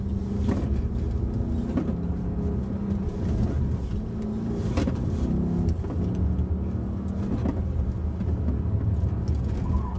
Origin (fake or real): real